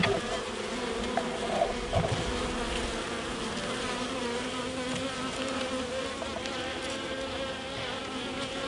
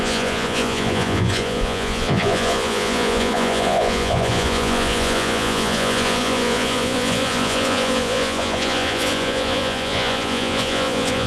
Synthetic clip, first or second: second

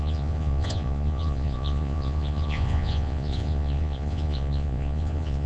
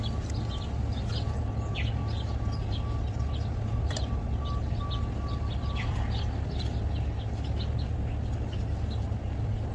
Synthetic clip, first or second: first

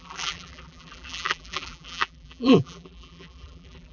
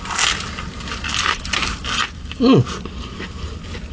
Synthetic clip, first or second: first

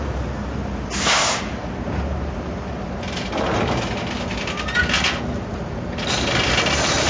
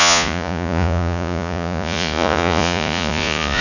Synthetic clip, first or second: second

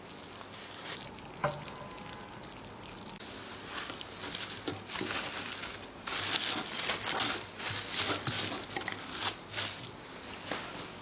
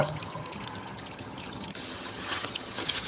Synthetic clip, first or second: second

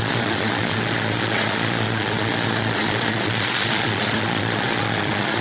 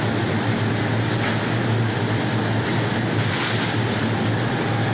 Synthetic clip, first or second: first